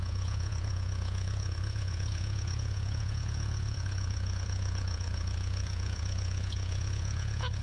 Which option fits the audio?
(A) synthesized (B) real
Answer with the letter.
A